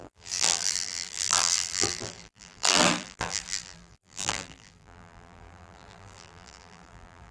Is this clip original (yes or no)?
no